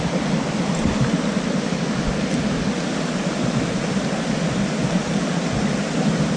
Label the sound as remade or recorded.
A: recorded